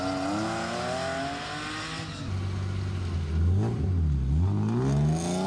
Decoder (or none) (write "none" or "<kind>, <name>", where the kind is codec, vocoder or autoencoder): none